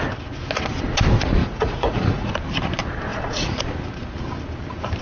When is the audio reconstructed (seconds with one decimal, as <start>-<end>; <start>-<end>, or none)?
1.4-2.3; 3.1-3.6